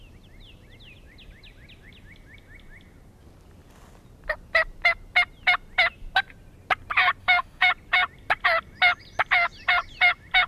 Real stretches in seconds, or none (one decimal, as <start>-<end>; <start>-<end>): 0.0-7.2; 7.7-10.5